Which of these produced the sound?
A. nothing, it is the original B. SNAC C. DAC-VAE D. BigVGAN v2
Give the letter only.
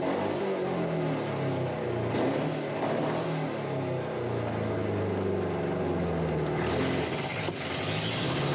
A